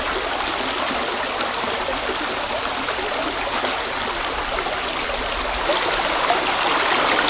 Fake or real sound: real